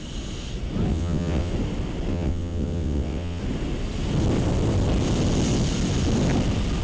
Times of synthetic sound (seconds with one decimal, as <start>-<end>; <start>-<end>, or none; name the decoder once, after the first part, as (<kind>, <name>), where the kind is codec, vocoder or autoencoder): 0.9-1.5 (vocoder, WaveNeXt); 2.1-3.4